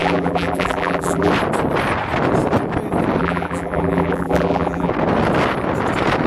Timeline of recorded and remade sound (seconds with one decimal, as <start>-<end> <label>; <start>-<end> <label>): 0.0-1.3 remade; 1.3-3.2 recorded; 3.2-4.9 remade; 4.9-6.3 recorded